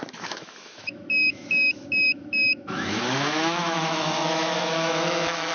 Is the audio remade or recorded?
remade